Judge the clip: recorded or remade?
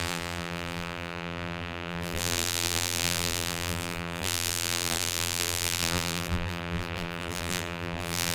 remade